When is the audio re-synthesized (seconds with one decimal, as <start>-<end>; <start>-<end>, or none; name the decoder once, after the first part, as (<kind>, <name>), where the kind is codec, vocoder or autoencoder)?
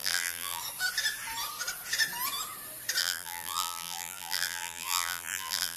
0.0-0.6 (vocoder, BigVGAN v2); 3.0-5.8